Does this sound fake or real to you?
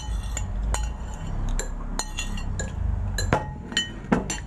real